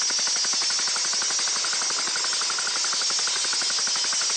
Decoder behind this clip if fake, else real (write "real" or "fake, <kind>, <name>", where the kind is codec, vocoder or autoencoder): real